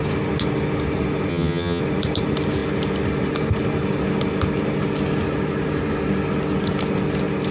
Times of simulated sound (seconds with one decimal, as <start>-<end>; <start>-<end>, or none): 1.3-1.8